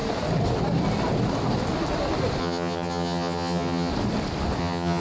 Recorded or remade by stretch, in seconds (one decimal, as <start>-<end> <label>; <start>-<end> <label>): 0.0-2.4 recorded; 2.4-3.9 remade; 3.9-4.6 recorded; 4.6-5.0 remade